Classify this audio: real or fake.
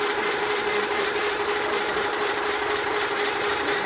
fake